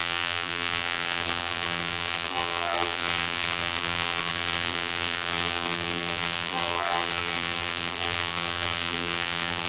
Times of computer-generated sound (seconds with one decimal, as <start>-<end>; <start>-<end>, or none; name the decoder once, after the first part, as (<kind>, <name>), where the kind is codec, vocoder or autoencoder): 0.0-9.7 (vocoder, BigVGAN v2)